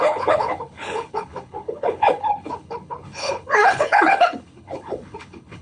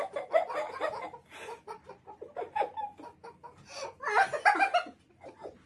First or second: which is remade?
first